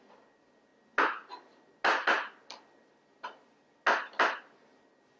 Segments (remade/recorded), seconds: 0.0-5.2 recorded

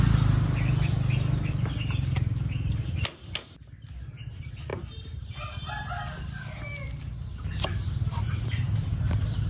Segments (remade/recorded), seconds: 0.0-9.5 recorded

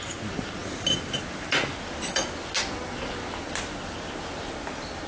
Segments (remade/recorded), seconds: 0.0-5.1 recorded

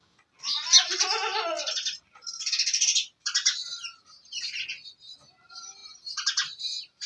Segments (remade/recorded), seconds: 0.0-1.3 recorded; 1.3-4.5 remade; 4.5-7.1 recorded

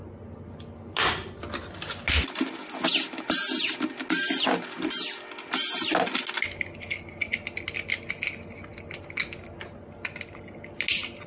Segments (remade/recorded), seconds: 0.0-11.3 recorded

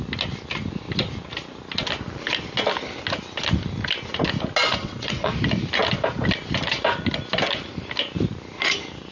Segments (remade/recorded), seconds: 0.0-4.8 recorded; 4.8-5.3 remade; 5.3-9.1 recorded

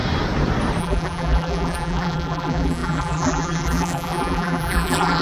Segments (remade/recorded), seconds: 0.0-0.8 recorded; 0.8-5.2 remade

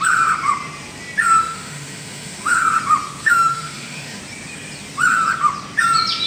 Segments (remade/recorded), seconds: 0.0-1.4 recorded; 1.4-2.6 remade; 2.6-3.2 recorded; 3.2-4.2 remade; 4.2-6.3 recorded